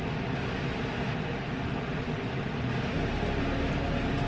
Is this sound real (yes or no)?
yes